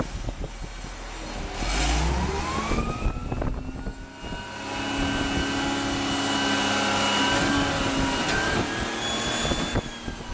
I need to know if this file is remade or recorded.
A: recorded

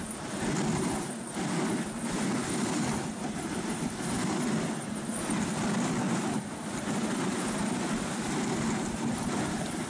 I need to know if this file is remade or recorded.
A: recorded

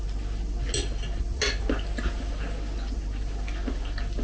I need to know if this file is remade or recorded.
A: recorded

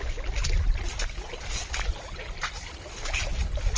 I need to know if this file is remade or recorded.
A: recorded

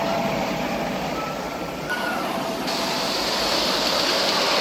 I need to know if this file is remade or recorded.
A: remade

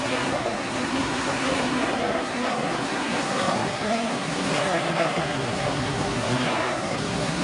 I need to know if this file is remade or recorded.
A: remade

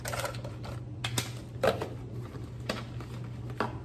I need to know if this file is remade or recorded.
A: recorded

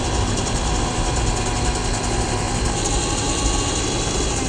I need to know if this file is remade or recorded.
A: recorded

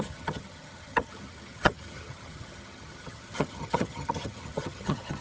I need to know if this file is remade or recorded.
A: remade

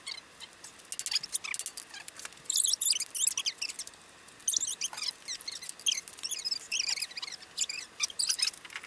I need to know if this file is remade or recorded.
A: recorded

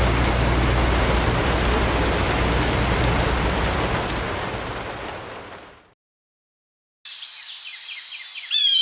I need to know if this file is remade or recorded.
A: recorded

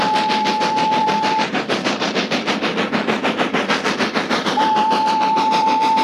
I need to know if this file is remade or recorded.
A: remade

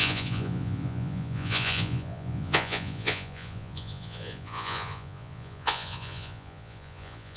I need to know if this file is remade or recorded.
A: remade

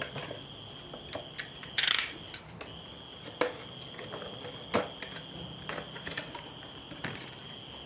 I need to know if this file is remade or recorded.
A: recorded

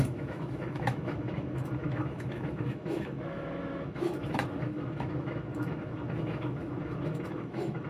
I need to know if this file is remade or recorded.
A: remade